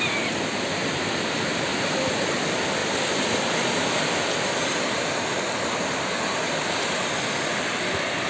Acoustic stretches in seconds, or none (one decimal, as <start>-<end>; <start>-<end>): 0.0-1.7; 2.3-2.8; 7.0-8.3